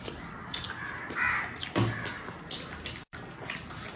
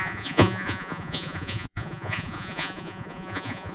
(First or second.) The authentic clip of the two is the first